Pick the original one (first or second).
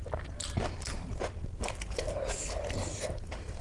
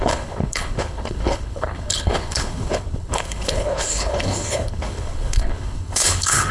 first